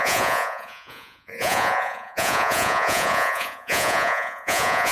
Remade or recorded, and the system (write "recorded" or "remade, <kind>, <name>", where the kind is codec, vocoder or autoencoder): remade, vocoder, Vocos